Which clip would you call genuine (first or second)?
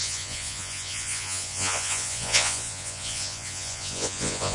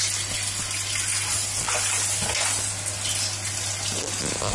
second